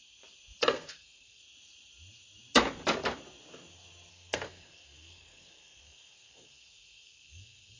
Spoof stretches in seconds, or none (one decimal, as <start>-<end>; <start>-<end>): 0.6-1.4; 4.1-7.8